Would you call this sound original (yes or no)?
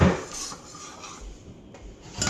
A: yes